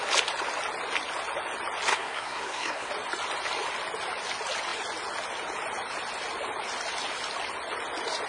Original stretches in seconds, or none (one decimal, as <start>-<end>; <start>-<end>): 0.0-1.9; 2.9-8.3